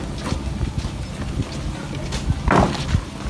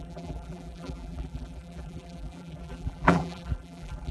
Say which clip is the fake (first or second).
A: second